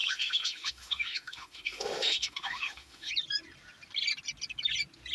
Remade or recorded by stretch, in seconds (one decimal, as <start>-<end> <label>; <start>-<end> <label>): 0.0-3.1 remade; 3.1-5.1 recorded